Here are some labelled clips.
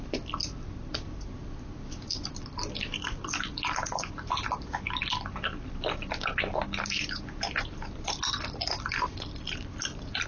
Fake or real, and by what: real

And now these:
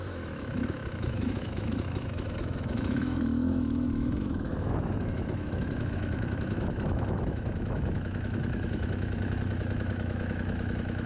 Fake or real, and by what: fake, autoencoder, DAC-VAE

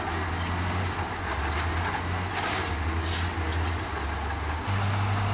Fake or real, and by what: real